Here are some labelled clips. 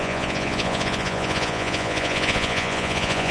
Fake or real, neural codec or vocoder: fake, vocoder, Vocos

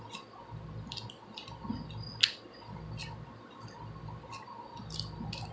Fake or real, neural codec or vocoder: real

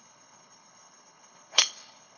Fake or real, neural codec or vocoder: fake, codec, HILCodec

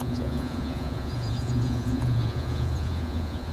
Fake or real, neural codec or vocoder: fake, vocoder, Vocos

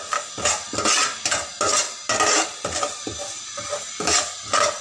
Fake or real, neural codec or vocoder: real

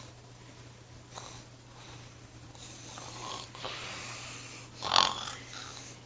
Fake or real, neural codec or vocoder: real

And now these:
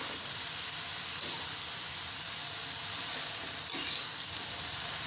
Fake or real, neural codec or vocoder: real